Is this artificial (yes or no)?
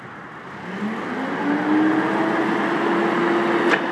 no